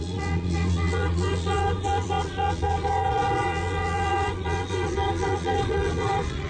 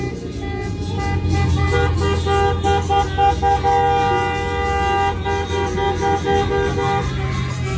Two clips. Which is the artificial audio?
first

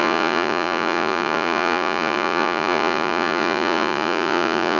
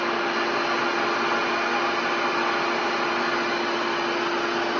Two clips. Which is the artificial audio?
first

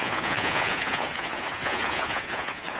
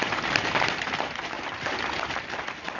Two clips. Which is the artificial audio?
first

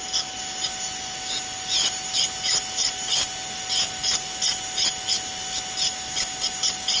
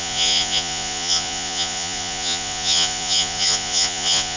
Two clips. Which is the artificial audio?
second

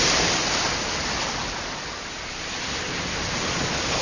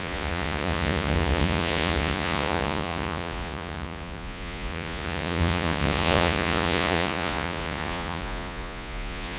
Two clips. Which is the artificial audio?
second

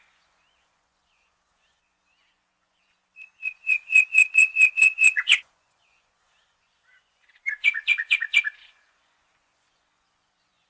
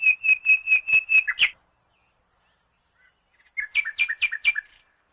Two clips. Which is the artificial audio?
first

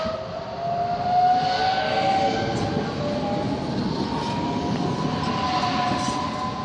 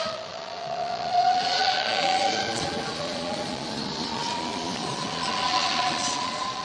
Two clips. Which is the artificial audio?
second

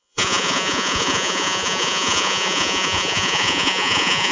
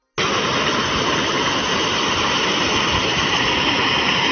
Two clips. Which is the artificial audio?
first